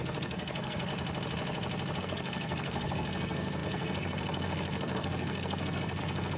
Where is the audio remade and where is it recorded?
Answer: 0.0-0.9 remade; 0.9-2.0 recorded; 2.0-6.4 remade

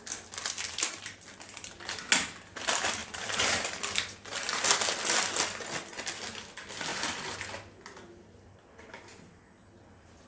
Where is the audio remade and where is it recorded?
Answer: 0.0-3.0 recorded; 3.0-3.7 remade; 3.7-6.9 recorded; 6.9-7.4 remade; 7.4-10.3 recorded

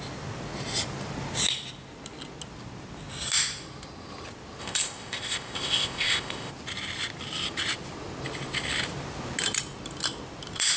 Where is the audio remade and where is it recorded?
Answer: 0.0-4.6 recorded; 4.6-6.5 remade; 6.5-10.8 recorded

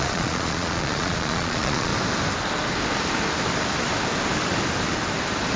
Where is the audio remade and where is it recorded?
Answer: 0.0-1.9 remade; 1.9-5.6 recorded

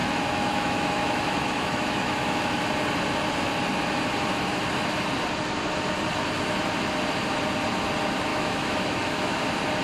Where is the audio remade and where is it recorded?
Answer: 0.0-2.6 remade; 2.6-8.3 recorded; 8.3-9.4 remade; 9.4-9.8 recorded

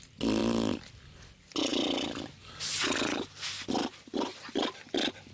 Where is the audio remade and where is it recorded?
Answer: 0.0-5.3 recorded

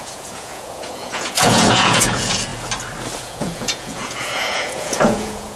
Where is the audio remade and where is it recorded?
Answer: 0.0-2.5 remade; 2.5-3.2 recorded; 3.2-5.6 remade

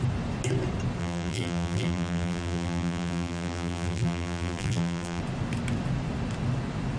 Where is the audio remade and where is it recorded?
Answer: 0.0-1.0 recorded; 1.0-5.2 remade; 5.2-7.0 recorded